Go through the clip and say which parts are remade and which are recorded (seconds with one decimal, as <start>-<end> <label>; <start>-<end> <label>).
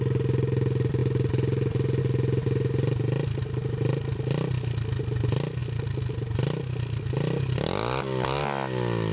0.0-9.1 recorded